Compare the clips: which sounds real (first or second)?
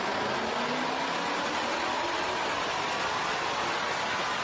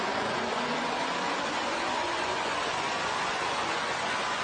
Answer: first